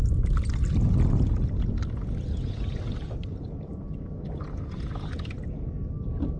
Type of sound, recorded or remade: recorded